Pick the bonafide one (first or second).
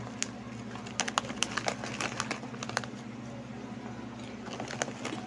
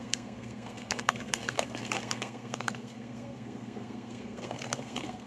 first